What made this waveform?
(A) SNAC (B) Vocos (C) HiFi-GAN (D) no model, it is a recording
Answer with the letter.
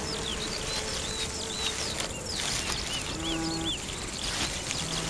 D